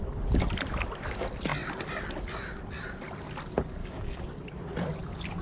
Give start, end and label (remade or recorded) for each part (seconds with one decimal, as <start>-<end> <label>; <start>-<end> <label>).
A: 0.0-3.8 recorded; 3.8-4.4 remade; 4.4-5.4 recorded